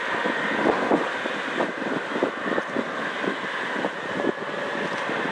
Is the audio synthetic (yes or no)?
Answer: no